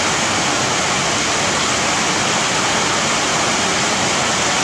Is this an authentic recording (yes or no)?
yes